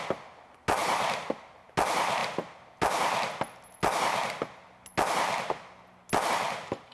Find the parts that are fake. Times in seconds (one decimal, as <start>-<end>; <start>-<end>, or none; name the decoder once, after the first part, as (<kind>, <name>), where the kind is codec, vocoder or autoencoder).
none